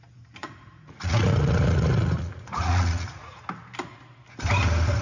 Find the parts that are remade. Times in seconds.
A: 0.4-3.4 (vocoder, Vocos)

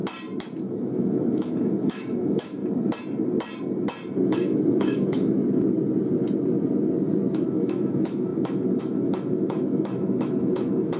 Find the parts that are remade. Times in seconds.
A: 0.6-2.6 (autoencoder, DAC-VAE); 4.2-5.4; 7.3-11.0

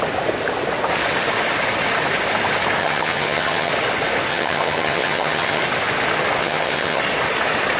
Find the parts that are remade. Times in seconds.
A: 2.8-3.7 (vocoder, HiFi-GAN); 4.3-5.6; 6.4-7.0